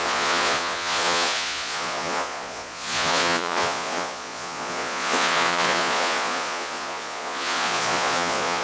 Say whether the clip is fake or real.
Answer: fake